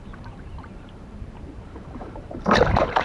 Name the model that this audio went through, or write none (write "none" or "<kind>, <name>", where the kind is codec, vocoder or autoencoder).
vocoder, BigVGAN v2